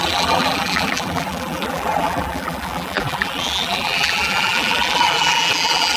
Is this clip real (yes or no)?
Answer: no